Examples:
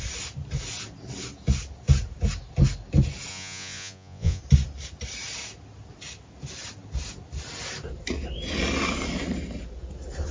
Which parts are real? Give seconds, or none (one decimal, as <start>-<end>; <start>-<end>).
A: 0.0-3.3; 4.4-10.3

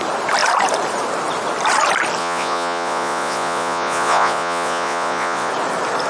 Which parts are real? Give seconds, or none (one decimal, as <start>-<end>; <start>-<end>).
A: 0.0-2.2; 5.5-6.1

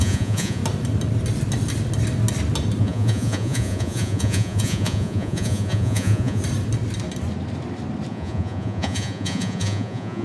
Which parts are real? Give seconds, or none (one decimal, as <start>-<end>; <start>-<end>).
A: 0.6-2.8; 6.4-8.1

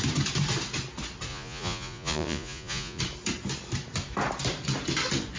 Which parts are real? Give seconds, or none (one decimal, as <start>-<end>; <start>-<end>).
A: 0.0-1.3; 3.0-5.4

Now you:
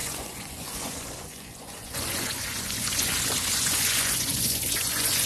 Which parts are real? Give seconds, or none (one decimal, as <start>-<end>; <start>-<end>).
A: none

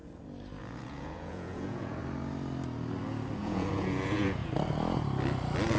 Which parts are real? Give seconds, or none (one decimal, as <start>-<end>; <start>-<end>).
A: 0.0-0.6; 2.0-3.4; 4.4-5.8